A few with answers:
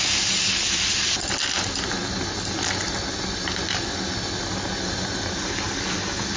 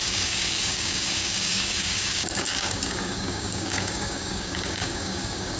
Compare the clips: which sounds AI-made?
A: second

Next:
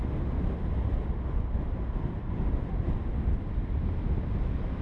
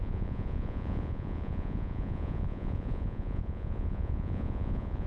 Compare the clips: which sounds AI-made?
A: second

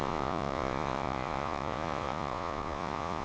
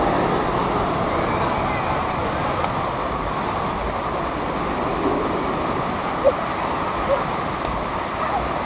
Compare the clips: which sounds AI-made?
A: first